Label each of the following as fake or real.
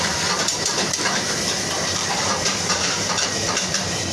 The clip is fake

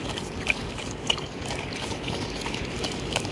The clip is fake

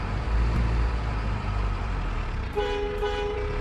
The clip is fake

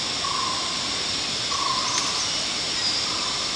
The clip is real